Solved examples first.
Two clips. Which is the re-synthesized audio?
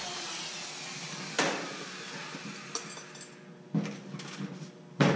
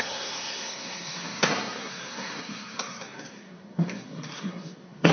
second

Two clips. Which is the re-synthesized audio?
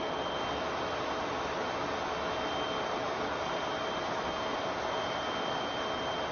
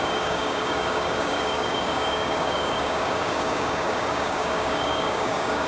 second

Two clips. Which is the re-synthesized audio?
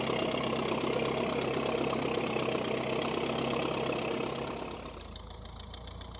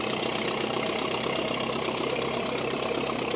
second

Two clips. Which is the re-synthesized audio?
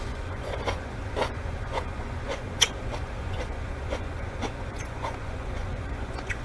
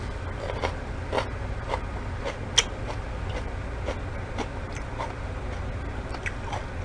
first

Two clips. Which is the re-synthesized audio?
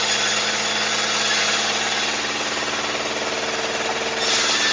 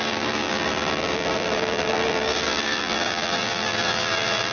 second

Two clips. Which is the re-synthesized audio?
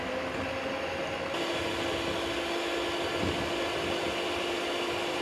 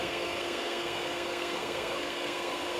second